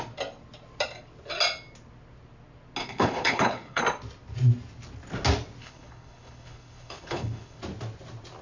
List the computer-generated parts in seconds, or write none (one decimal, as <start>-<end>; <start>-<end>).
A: 2.8-3.8; 5.6-7.6